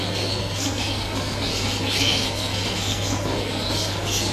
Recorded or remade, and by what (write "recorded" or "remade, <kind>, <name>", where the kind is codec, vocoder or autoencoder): remade, codec, SNAC